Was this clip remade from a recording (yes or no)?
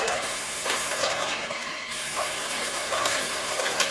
yes